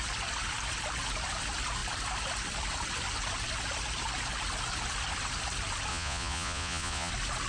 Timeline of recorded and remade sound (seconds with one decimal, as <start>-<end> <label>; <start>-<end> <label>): 0.0-5.9 recorded; 5.9-7.1 remade; 7.1-7.5 recorded